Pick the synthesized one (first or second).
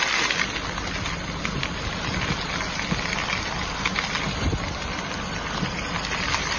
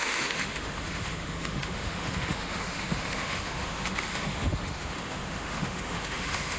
second